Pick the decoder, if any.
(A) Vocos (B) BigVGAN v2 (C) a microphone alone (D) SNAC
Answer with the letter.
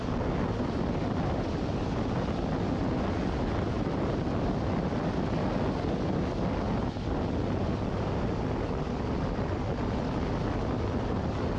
C